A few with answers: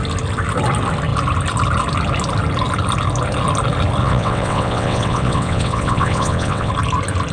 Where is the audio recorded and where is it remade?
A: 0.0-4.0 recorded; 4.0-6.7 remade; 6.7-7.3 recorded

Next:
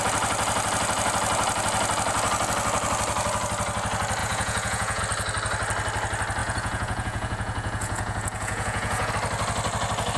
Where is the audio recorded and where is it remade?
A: 0.0-4.2 recorded; 4.2-5.0 remade; 5.0-6.4 recorded; 6.4-9.1 remade; 9.1-10.2 recorded

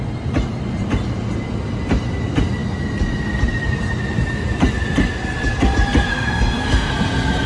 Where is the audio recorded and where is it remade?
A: 0.0-6.1 recorded; 6.1-6.9 remade; 6.9-7.5 recorded

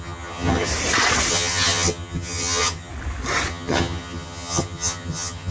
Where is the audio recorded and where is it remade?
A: 0.0-0.7 remade; 0.7-1.3 recorded; 1.3-2.9 remade; 2.9-3.5 recorded; 3.5-5.5 remade

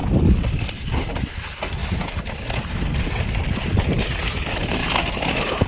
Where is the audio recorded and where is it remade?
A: 0.0-5.7 recorded

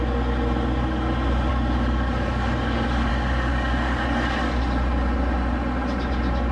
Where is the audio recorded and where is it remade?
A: 0.0-1.5 recorded; 1.5-3.1 remade; 3.1-3.5 recorded; 3.5-4.6 remade; 4.6-6.5 recorded